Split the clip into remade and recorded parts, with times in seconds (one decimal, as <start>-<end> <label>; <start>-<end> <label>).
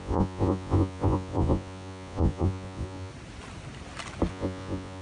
0.0-3.1 remade; 3.1-4.3 recorded; 4.3-5.0 remade